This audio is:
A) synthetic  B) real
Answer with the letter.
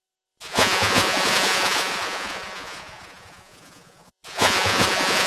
A